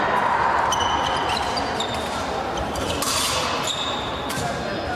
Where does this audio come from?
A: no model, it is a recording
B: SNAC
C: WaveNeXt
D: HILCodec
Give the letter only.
A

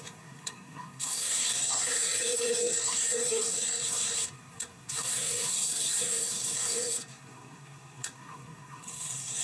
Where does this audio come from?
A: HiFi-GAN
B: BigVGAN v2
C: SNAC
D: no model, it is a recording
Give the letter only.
C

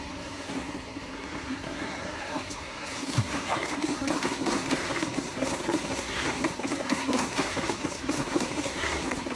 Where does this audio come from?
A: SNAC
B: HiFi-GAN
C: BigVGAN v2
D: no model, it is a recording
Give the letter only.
A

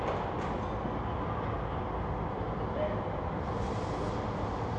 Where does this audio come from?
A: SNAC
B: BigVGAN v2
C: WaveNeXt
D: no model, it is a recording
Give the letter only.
D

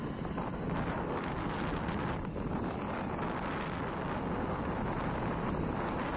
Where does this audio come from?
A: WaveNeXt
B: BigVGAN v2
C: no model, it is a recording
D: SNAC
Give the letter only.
C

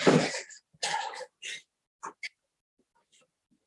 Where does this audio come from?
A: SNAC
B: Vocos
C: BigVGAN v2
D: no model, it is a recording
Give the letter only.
D